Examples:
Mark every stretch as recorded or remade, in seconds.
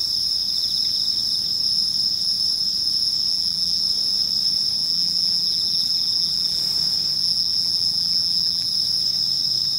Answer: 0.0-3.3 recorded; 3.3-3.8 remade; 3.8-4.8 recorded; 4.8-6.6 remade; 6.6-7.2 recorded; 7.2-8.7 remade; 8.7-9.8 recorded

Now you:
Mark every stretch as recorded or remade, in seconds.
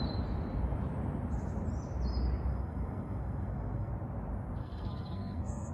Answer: 0.0-2.5 recorded; 2.5-3.9 remade; 3.9-4.6 recorded; 4.6-5.7 remade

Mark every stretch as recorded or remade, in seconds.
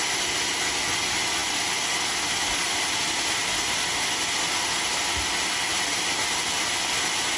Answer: 0.0-7.4 recorded